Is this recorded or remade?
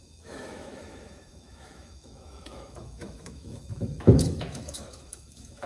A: remade